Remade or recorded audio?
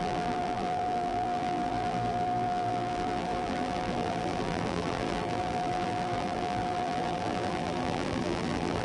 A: remade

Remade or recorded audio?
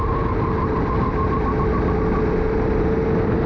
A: recorded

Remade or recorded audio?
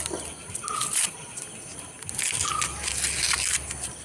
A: recorded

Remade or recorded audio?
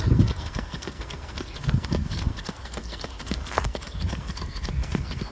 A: remade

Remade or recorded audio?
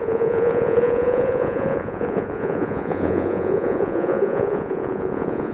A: remade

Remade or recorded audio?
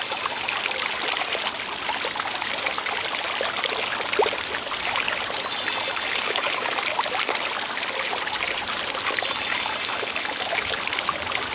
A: remade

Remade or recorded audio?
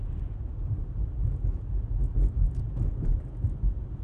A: remade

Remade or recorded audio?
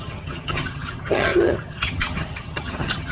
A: remade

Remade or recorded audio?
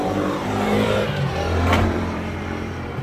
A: remade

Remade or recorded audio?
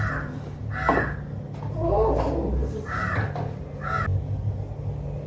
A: recorded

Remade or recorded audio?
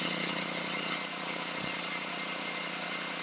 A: remade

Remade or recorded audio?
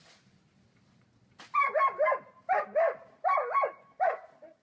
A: recorded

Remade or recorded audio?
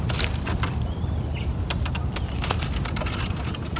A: recorded